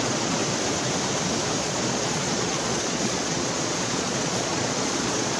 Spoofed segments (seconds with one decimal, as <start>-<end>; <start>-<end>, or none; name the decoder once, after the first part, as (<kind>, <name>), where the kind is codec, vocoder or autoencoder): 0.0-0.4 (vocoder, Vocos); 1.6-5.4